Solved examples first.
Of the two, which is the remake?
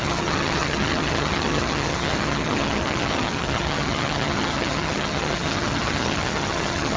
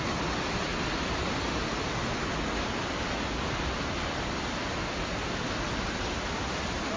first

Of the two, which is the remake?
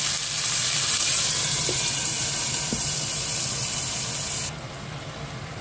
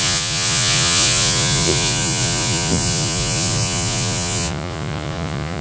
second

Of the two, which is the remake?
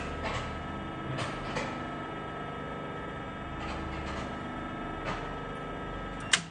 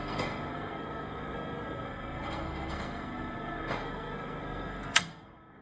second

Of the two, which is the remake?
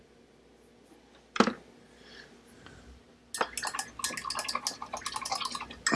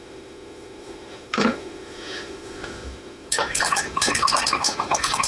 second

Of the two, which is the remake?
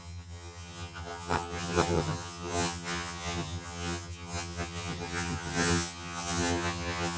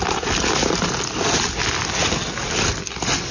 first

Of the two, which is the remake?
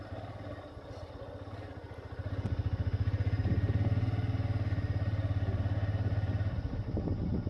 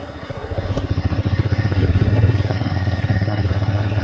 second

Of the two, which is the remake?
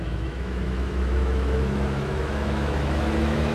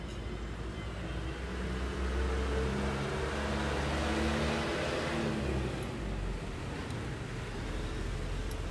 first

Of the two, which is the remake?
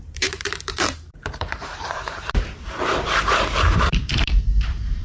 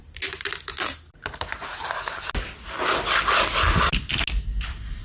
first